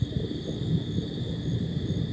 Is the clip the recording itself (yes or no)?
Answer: yes